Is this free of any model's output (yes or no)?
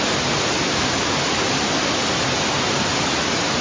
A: yes